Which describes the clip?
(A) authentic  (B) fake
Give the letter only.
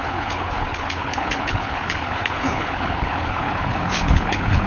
B